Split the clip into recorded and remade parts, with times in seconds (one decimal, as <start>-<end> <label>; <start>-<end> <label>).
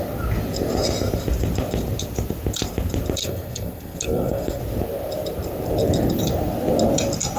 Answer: 0.0-3.2 recorded; 3.2-4.6 remade; 4.6-7.4 recorded